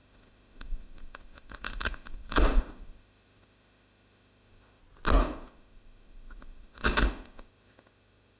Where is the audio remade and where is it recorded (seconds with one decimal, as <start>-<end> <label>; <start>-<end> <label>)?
0.0-4.8 remade; 4.8-5.2 recorded; 5.2-8.4 remade